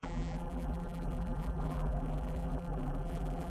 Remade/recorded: remade